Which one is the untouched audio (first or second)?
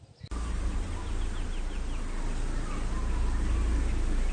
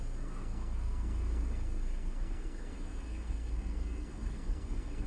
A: first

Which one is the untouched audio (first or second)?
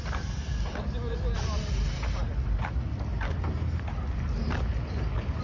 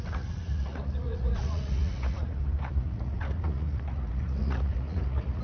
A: first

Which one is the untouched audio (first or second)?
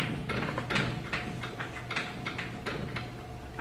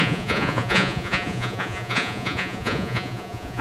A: first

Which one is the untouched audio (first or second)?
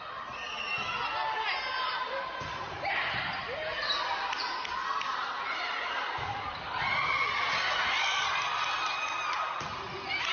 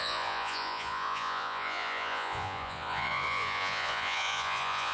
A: first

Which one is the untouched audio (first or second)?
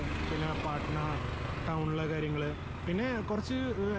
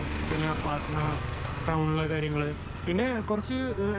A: first